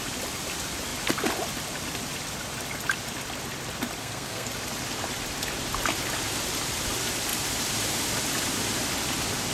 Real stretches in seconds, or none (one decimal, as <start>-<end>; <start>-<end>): 0.0-4.0; 4.5-9.5